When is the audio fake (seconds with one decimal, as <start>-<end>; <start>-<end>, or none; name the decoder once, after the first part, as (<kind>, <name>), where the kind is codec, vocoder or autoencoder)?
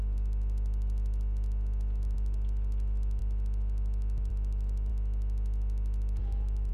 none